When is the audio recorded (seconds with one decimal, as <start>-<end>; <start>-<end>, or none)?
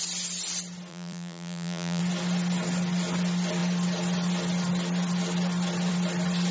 0.0-0.9; 2.0-6.5